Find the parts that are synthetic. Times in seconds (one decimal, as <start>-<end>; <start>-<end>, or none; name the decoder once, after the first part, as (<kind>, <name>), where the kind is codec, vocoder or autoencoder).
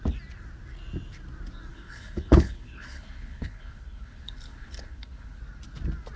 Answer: 1.7-5.4 (codec, HILCodec)